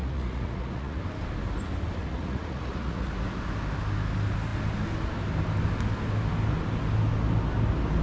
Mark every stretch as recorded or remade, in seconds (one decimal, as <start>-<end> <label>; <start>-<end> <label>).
0.0-1.0 remade; 1.0-2.0 recorded; 2.0-3.1 remade; 3.1-8.0 recorded